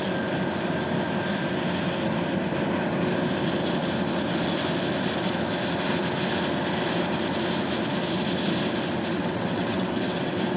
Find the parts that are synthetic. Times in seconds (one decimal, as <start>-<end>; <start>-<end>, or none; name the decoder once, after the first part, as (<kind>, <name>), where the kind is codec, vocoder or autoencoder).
9.2-10.6 (vocoder, WaveNeXt)